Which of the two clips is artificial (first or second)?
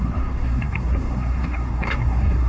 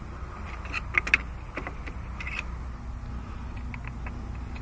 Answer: first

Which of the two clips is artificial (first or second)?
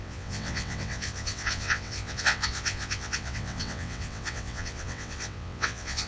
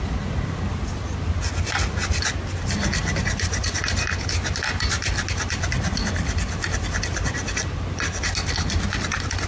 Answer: first